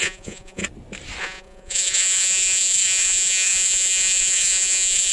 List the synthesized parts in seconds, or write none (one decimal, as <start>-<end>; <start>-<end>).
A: 0.0-0.6; 1.2-5.1